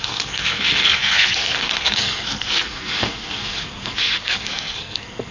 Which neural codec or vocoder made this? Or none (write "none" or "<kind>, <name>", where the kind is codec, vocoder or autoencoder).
codec, SNAC